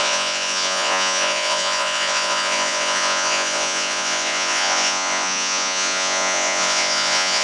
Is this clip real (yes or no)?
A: no